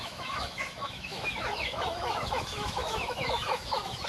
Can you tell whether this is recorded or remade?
remade